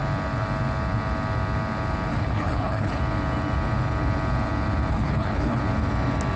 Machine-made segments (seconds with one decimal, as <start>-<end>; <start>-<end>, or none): 2.1-3.0; 4.9-5.6